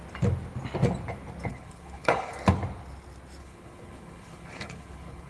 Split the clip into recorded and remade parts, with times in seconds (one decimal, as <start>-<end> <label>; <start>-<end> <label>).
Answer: 0.0-1.5 recorded; 1.5-2.3 remade; 2.3-3.4 recorded; 3.4-5.3 remade